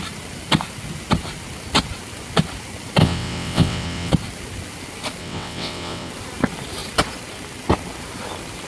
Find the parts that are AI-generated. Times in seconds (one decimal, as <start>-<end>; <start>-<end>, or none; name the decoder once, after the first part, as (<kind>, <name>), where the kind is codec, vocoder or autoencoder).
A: 3.0-4.1 (vocoder, WaveNeXt); 5.2-6.1